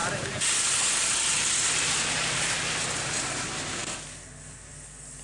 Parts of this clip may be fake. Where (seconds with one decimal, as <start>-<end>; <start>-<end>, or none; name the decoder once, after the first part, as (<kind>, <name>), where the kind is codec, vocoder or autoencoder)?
none